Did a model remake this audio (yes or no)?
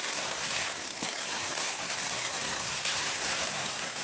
yes